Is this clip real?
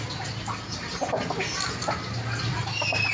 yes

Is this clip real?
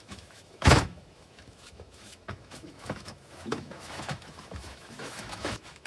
no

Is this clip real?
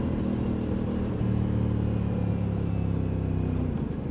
yes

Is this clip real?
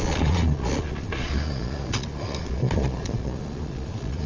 no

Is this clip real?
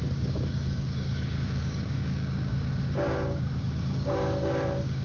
no